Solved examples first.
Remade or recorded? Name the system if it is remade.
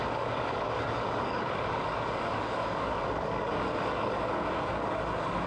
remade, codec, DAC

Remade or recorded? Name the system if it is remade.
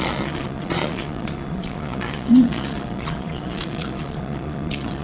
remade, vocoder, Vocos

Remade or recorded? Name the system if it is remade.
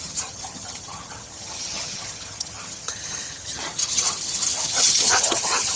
remade, vocoder, HiFi-GAN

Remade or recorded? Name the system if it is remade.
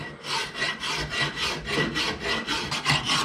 remade, vocoder, BigVGAN v2